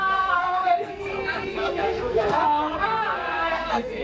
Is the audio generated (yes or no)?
yes